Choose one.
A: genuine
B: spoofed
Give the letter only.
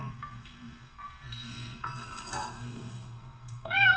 B